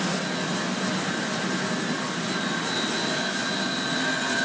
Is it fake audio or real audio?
real